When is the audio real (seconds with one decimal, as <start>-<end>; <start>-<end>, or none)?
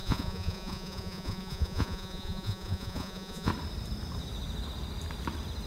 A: 3.5-5.7